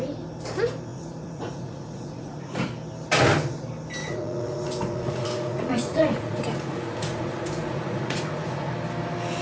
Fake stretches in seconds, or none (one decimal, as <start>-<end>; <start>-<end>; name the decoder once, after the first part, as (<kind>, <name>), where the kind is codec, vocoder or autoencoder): 0.9-2.7 (vocoder, Vocos); 4.0-8.7